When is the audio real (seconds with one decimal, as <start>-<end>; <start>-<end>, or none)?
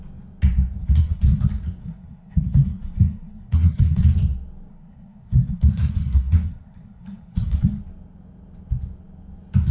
0.0-0.8; 1.4-1.8; 4.0-4.7; 7.7-9.7